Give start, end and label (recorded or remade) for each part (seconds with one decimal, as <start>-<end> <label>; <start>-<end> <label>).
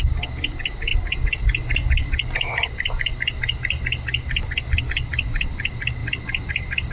0.0-6.9 recorded